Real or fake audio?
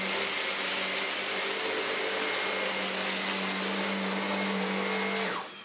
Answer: real